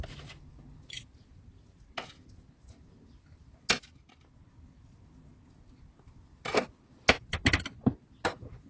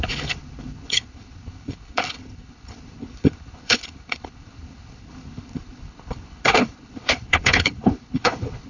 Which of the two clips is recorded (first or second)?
first